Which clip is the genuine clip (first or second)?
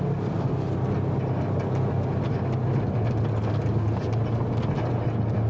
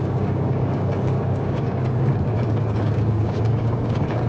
first